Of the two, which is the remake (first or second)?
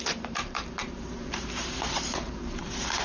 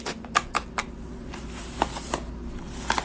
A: first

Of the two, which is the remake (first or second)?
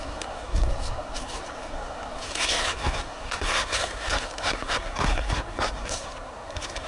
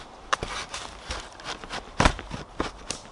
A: first